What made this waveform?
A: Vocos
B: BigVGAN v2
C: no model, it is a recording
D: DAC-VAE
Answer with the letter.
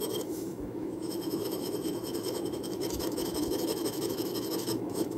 D